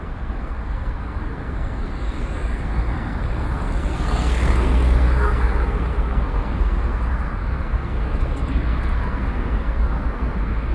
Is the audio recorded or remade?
remade